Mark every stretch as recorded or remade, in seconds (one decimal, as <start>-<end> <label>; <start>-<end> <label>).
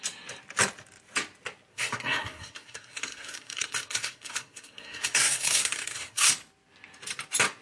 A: 0.0-1.7 recorded; 1.7-6.3 remade; 6.3-7.6 recorded